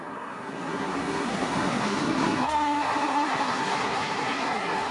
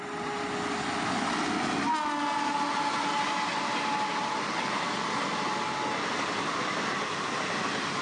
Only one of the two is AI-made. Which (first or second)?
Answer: first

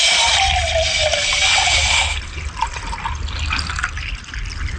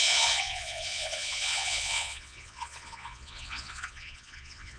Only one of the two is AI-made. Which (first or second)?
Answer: second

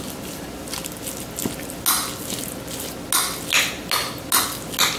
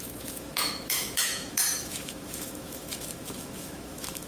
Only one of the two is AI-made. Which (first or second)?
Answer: second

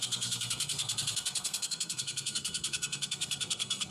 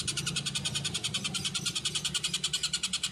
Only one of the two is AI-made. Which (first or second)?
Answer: first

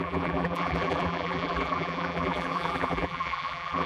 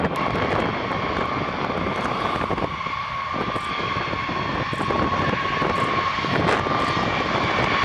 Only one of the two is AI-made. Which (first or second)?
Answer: first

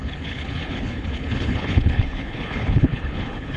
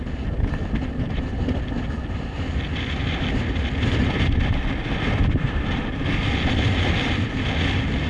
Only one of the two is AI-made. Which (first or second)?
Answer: first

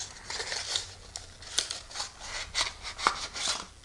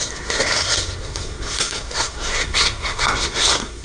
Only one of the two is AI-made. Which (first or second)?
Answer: second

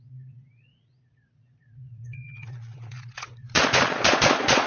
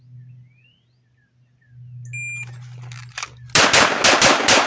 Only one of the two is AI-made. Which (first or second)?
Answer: first